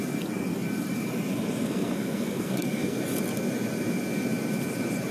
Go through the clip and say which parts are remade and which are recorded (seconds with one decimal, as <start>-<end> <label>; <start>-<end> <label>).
0.0-1.6 recorded; 1.6-3.0 remade; 3.0-5.1 recorded